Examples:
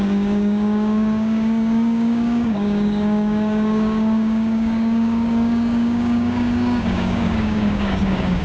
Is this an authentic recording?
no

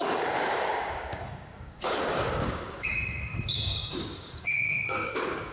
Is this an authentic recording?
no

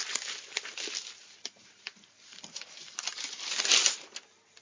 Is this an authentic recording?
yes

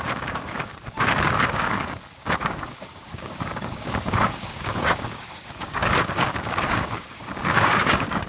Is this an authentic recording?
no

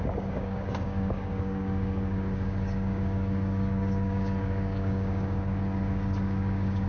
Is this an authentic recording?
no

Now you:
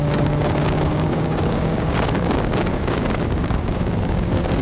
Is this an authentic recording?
no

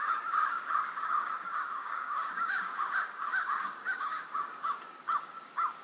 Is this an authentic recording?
no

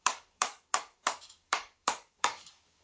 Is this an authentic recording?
no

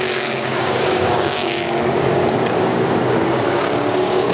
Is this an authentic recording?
no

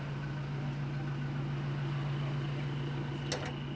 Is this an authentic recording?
yes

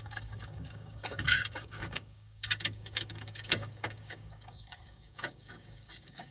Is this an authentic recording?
no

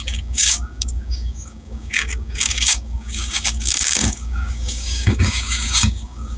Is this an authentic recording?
no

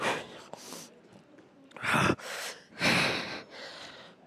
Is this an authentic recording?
yes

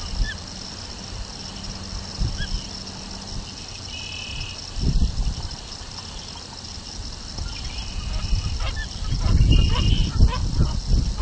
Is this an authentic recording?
yes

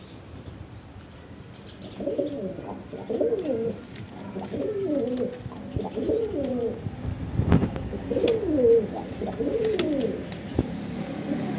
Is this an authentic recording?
yes